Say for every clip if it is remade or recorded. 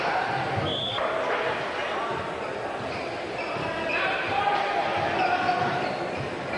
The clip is recorded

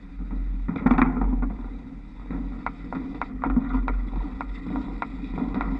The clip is recorded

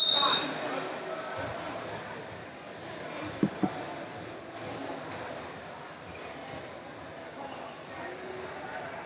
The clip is recorded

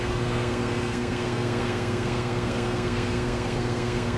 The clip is remade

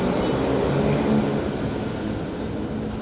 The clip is recorded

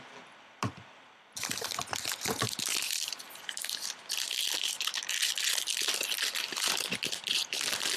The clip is recorded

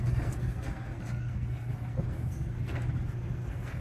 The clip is remade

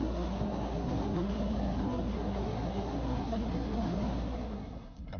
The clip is remade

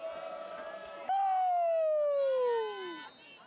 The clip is recorded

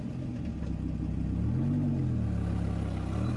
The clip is recorded